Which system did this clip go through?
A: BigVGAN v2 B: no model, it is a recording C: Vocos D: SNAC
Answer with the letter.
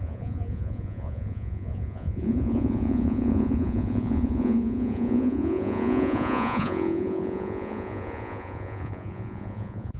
C